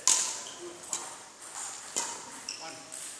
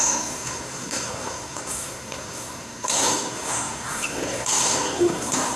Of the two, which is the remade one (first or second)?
second